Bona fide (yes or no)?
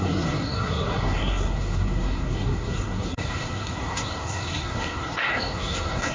no